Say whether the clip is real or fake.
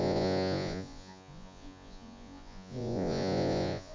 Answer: fake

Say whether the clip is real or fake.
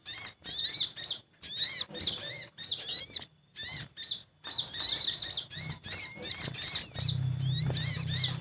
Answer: real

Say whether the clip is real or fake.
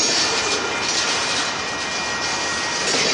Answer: real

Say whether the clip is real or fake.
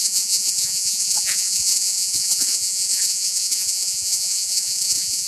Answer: fake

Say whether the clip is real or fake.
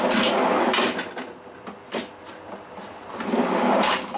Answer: real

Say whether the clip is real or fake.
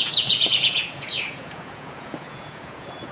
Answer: fake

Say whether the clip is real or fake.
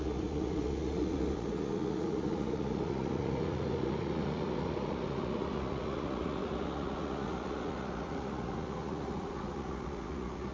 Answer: fake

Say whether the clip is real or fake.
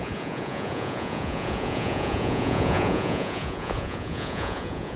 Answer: fake